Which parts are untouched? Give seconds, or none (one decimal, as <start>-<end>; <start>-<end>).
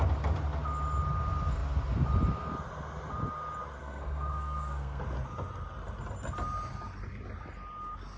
0.0-3.8; 5.0-8.2